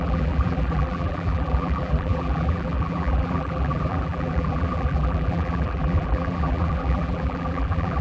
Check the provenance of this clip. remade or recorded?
remade